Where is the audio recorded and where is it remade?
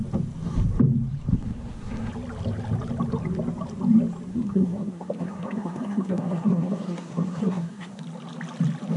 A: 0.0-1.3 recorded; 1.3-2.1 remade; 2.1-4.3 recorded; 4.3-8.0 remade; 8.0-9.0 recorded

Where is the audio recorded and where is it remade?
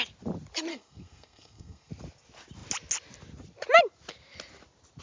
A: 0.0-0.7 recorded; 0.7-1.9 remade; 1.9-5.0 recorded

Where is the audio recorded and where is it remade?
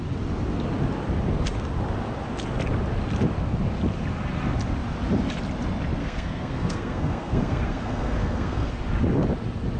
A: 0.0-6.0 recorded; 6.0-8.7 remade; 8.7-9.8 recorded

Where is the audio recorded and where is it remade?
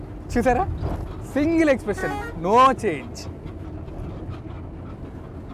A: 0.0-5.5 recorded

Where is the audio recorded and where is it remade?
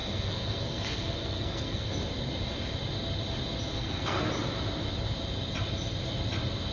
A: 0.0-1.9 remade; 1.9-3.7 recorded; 3.7-4.3 remade; 4.3-6.7 recorded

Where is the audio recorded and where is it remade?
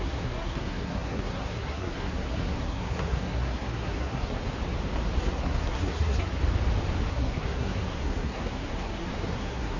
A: 0.0-4.4 remade; 4.4-5.2 recorded; 5.2-6.4 remade; 6.4-7.1 recorded; 7.1-9.8 remade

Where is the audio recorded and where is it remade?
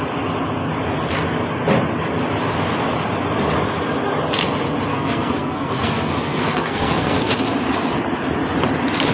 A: 0.0-4.9 recorded; 4.9-7.3 remade; 7.3-9.1 recorded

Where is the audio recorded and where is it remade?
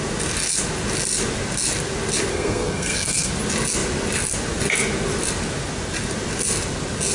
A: 0.0-2.3 recorded; 2.3-3.3 remade; 3.3-7.1 recorded